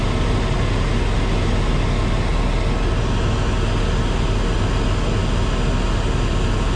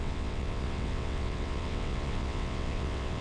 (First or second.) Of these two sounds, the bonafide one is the first